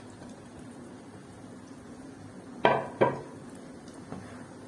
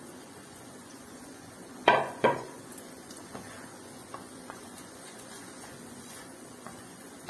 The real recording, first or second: first